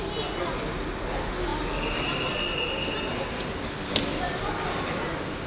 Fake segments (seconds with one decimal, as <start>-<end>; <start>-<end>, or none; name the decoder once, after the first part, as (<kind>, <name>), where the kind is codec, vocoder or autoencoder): none